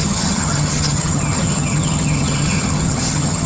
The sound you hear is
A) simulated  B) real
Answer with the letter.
A